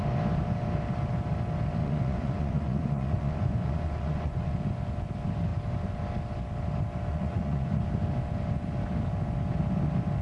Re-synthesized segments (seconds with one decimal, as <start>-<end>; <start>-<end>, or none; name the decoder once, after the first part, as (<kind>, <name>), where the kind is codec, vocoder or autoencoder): 1.8-4.5 (vocoder, Vocos); 7.1-7.8